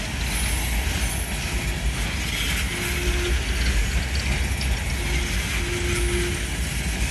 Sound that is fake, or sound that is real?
real